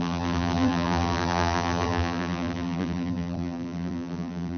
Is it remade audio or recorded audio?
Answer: remade